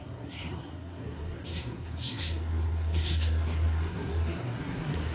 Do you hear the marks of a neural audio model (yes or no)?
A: yes